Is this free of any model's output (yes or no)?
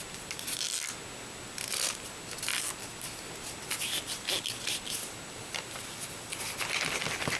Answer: yes